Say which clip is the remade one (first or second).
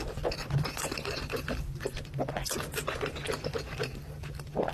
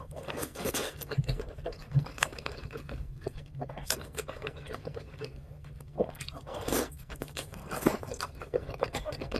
second